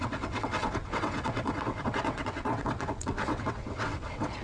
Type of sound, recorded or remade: remade